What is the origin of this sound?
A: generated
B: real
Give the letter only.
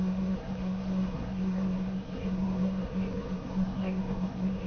A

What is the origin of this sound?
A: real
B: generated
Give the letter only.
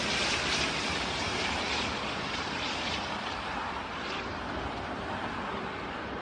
B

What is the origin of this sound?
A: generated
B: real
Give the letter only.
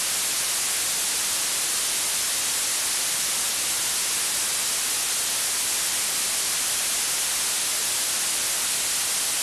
B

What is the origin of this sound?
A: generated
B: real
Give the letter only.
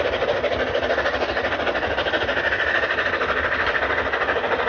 B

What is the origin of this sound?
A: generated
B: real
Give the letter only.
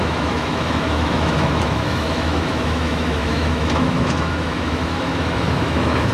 A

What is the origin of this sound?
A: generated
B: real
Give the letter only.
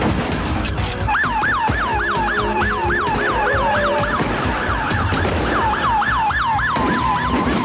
A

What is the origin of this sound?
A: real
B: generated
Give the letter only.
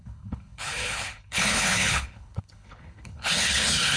B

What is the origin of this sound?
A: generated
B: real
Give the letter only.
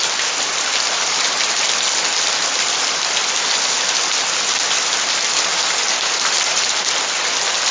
B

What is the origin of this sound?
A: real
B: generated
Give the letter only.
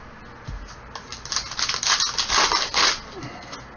A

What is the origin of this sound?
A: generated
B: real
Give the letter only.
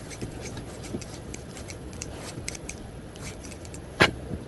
A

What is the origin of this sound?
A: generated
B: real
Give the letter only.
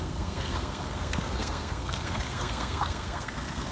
A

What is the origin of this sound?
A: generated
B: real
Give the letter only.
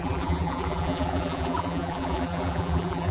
A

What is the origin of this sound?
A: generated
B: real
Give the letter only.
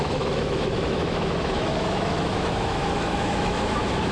A